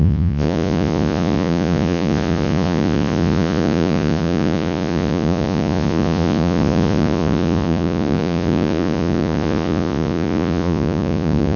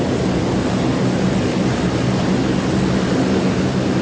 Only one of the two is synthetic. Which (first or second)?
first